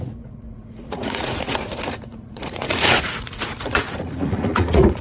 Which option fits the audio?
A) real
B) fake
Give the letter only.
B